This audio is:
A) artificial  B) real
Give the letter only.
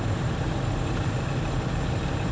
B